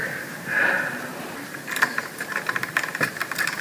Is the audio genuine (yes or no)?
no